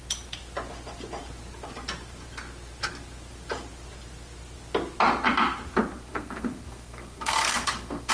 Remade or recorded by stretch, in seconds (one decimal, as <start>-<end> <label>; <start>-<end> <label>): 0.0-6.1 recorded; 6.1-8.1 remade